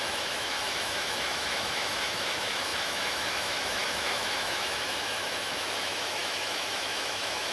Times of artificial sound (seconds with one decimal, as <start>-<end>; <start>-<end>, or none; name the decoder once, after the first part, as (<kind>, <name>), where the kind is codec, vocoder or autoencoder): 0.0-7.5 (autoencoder, DAC-VAE)